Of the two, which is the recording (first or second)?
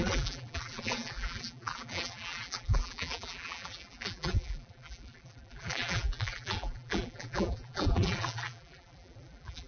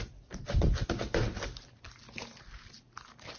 second